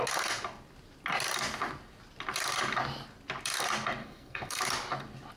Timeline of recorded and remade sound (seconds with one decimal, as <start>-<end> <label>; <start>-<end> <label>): 0.0-4.0 recorded; 4.0-4.6 remade; 4.6-5.4 recorded